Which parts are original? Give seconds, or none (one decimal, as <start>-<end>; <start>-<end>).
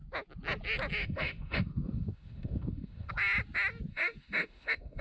0.0-1.0; 3.1-3.9